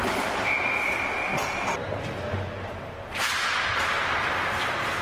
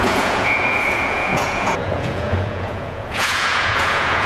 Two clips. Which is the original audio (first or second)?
first